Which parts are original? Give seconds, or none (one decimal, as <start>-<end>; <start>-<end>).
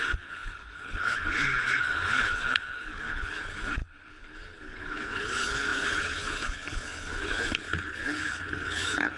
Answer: none